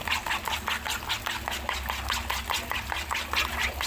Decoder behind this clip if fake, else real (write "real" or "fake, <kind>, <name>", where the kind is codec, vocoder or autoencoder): real